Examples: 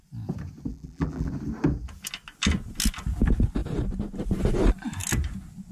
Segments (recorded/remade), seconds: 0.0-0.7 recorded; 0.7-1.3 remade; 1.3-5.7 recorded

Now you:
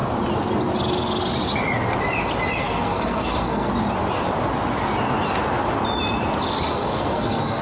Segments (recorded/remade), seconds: 0.0-2.6 recorded; 2.6-3.7 remade; 3.7-6.7 recorded; 6.7-7.6 remade